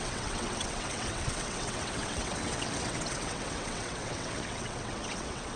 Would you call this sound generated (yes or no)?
yes